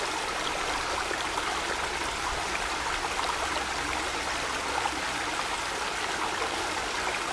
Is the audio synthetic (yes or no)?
no